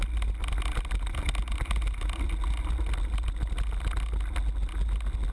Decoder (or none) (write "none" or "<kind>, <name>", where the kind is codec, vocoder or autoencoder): none